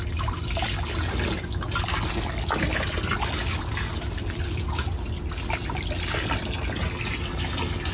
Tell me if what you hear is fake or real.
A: real